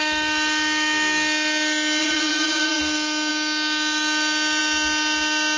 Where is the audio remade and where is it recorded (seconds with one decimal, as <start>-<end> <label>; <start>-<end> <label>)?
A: 0.0-2.0 recorded; 2.0-2.8 remade; 2.8-5.6 recorded